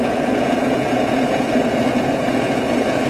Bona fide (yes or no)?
no